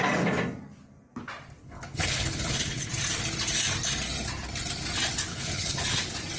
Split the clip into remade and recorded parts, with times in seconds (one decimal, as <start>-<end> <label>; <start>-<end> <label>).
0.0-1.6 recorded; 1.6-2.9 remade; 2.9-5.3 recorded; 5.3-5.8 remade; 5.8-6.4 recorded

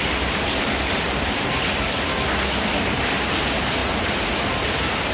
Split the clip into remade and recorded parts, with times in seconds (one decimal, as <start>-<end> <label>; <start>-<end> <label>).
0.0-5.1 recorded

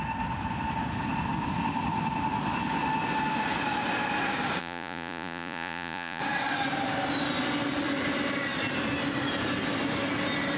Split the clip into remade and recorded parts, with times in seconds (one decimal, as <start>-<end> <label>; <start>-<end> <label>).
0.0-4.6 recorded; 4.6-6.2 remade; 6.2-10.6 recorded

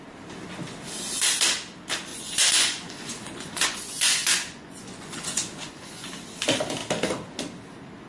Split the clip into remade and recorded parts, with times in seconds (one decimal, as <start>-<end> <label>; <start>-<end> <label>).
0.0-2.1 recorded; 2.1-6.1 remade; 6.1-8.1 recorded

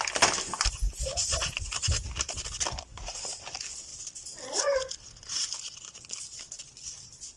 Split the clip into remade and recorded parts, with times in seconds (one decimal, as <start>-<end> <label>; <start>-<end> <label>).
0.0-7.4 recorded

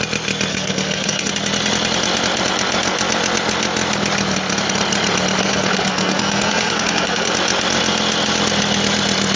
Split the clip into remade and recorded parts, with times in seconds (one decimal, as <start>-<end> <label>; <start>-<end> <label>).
0.0-0.5 recorded; 0.5-1.3 remade; 1.3-5.4 recorded; 5.4-7.3 remade; 7.3-9.4 recorded

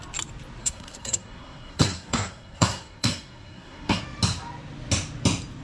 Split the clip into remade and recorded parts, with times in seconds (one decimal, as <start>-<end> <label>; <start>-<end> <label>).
0.0-0.6 recorded; 0.6-4.0 remade; 4.0-5.6 recorded

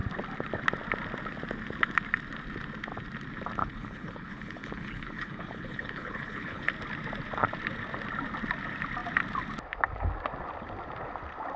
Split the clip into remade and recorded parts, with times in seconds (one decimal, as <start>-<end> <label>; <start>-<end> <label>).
0.0-3.6 recorded; 3.6-6.7 remade; 6.7-11.6 recorded